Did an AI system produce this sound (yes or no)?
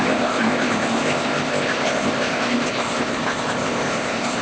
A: yes